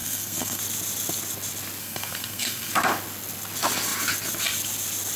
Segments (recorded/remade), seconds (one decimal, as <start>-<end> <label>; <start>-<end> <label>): 0.0-0.6 remade; 0.6-1.8 recorded; 1.8-2.7 remade; 2.7-5.2 recorded